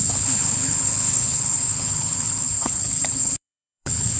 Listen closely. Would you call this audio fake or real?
fake